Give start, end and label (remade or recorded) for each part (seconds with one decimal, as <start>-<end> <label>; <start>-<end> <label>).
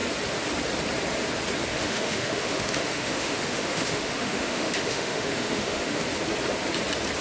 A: 0.0-1.7 recorded; 1.7-6.0 remade; 6.0-7.2 recorded